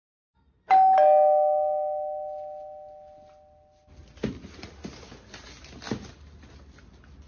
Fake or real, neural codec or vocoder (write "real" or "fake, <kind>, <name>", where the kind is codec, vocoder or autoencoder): real